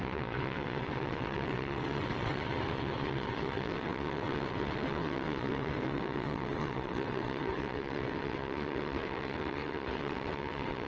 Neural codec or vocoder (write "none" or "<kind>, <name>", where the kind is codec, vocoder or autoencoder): vocoder, WaveNeXt